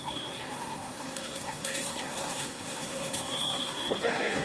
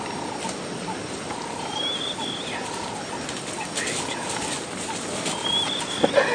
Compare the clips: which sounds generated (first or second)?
first